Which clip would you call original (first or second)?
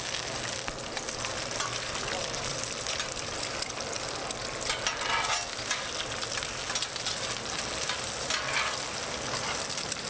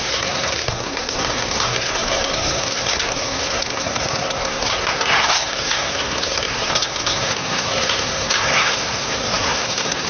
first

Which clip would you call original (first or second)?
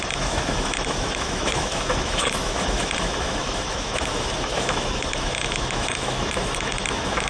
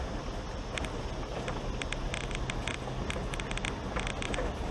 second